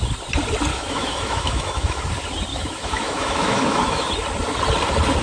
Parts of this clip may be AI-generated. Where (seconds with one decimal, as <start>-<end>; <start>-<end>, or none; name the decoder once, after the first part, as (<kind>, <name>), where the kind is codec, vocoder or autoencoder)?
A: 0.7-2.0 (autoencoder, DAC-VAE); 2.5-4.1